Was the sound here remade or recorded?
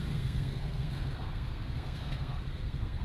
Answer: remade